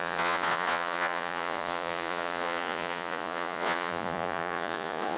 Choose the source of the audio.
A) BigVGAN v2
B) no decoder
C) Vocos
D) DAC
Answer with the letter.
C